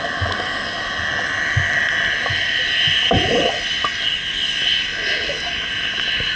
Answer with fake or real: real